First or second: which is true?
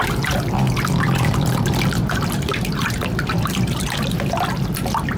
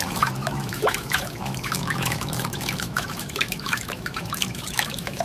first